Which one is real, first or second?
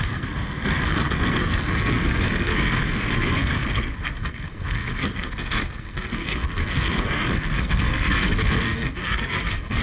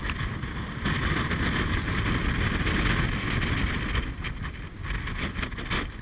second